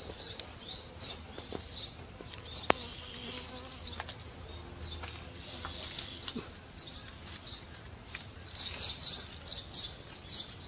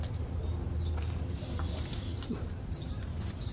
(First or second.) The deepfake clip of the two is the second